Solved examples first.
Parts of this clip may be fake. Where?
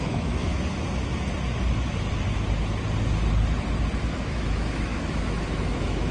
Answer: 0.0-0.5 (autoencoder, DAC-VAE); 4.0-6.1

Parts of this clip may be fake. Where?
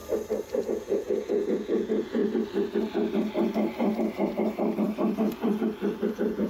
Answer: 0.6-2.2 (vocoder, Vocos); 6.1-6.5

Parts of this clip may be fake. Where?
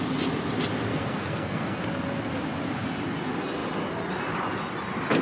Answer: 0.9-1.8 (codec, SNAC)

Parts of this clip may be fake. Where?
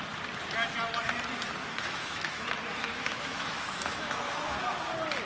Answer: 1.6-4.8 (autoencoder, DAC-VAE)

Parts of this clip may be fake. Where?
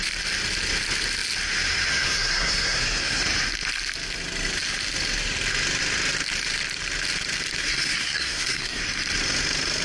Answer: 1.9-3.2 (codec, SNAC); 7.6-8.8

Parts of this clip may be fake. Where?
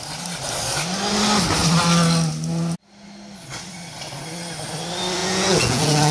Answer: 5.2-6.1 (vocoder, Vocos)